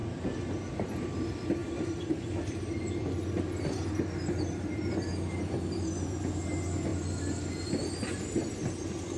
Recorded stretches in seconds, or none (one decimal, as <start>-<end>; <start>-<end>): 0.0-1.6; 6.3-9.2